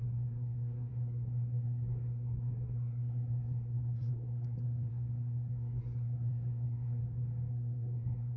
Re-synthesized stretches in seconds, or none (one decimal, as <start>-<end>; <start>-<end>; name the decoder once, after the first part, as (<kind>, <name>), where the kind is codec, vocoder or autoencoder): 0.0-7.0 (codec, SNAC); 7.5-8.4